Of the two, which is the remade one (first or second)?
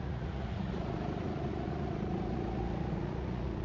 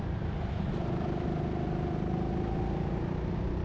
first